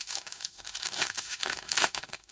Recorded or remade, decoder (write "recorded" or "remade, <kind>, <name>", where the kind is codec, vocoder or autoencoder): remade, autoencoder, DAC-VAE